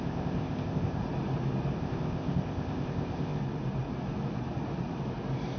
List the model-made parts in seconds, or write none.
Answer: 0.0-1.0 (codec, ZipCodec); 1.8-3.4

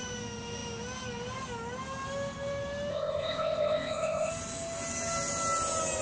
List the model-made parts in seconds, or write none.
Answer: 2.9-4.3 (codec, ZipCodec)

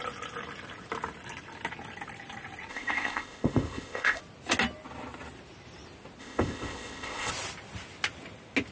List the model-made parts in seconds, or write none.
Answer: 2.7-4.2 (codec, ZipCodec); 6.2-7.3